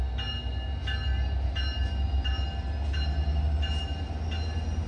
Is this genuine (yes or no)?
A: yes